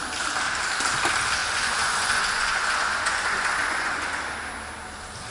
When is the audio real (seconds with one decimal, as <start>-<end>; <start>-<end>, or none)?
0.0-1.4; 4.2-5.3